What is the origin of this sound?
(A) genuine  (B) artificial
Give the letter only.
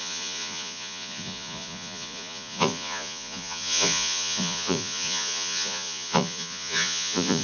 B